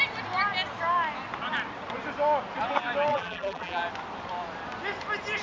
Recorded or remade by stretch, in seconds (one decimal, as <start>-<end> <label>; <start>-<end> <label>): 0.0-3.1 recorded; 3.1-3.8 remade; 3.8-5.4 recorded